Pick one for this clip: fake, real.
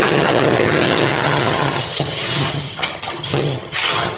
fake